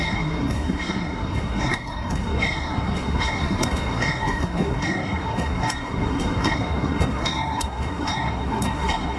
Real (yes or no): no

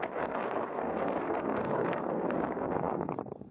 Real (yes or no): no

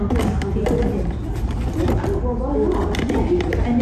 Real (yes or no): yes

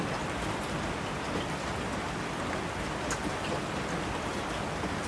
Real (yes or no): yes